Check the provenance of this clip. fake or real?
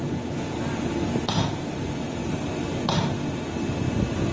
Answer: real